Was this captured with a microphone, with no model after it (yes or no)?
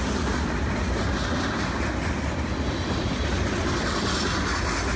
yes